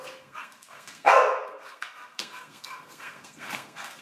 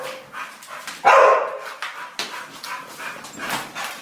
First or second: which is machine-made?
first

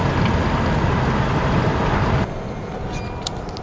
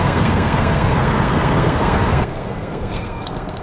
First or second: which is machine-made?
second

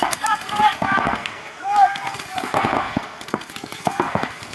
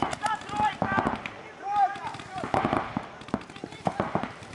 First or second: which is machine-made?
first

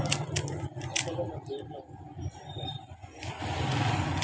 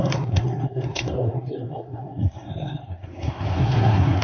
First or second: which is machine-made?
second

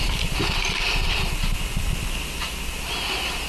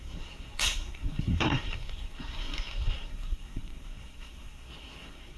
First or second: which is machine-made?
second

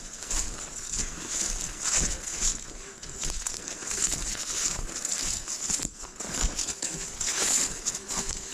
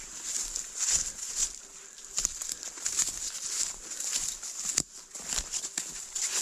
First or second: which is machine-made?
first